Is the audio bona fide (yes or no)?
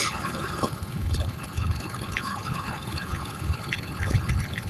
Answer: no